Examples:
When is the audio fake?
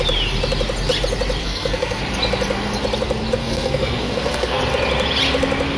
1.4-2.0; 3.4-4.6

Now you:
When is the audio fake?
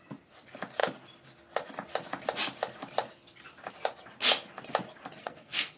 5.2-5.8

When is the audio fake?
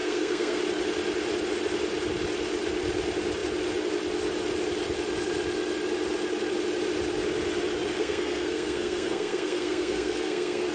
0.0-0.6; 8.0-10.7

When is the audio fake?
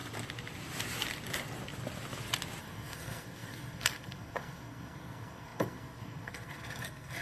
2.6-7.2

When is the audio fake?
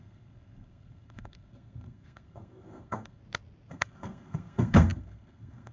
0.0-3.2; 3.7-5.7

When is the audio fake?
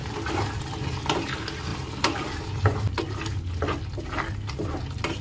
none